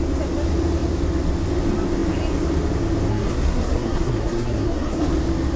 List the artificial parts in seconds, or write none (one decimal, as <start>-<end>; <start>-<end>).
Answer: 3.1-5.1